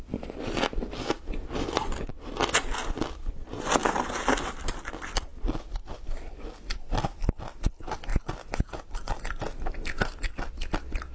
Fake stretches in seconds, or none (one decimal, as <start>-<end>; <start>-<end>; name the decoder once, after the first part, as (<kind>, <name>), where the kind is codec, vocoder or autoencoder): none